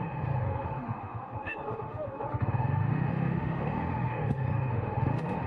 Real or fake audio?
fake